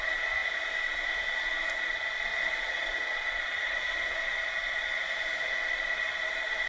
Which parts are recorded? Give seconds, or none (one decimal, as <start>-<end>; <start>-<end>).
0.0-2.3; 4.2-6.7